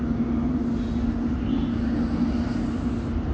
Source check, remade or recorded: recorded